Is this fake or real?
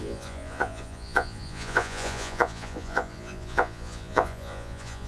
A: fake